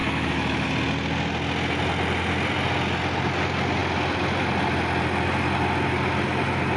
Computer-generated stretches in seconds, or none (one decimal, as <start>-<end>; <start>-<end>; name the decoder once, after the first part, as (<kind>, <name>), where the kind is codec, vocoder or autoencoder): 0.0-0.7 (autoencoder, DAC-VAE)